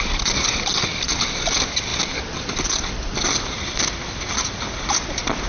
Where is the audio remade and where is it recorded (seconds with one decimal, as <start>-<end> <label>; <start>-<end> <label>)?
0.0-1.9 recorded; 1.9-3.8 remade; 3.8-5.5 recorded

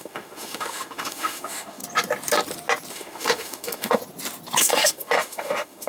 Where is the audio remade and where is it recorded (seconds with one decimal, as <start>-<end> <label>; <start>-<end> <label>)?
0.0-1.8 remade; 1.8-2.9 recorded; 2.9-4.0 remade; 4.0-4.6 recorded; 4.6-5.9 remade

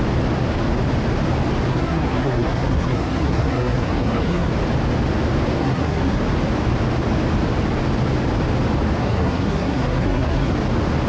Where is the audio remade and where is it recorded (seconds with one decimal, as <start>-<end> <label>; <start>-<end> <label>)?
0.0-1.7 recorded; 1.7-4.5 remade; 4.5-5.6 recorded; 5.6-6.2 remade; 6.2-9.0 recorded; 9.0-10.5 remade; 10.5-11.1 recorded

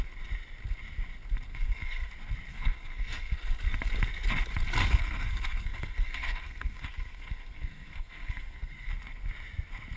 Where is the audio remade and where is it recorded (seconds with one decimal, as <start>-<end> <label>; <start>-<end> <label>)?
0.0-1.5 recorded; 1.5-2.1 remade; 2.1-2.5 recorded; 2.5-3.6 remade; 3.6-4.8 recorded; 4.8-8.9 remade; 8.9-10.0 recorded

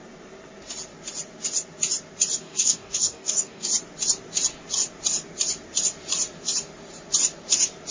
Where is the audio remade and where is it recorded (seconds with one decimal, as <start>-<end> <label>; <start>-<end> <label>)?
0.0-2.4 recorded; 2.4-3.7 remade; 3.7-7.9 recorded

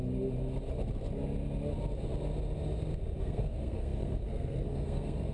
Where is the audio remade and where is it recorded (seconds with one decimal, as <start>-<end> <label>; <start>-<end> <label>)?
0.0-3.2 recorded; 3.2-5.3 remade

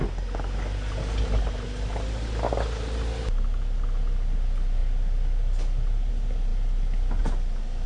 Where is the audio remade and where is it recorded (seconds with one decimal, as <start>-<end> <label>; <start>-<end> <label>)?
0.0-7.9 recorded

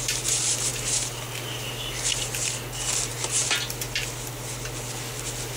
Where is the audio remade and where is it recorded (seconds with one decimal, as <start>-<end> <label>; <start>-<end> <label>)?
0.0-5.6 recorded